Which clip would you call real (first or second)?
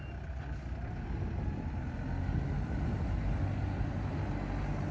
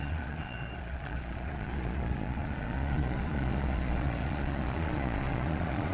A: first